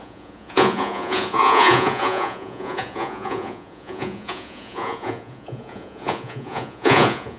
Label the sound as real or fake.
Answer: fake